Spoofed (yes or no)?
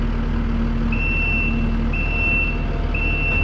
no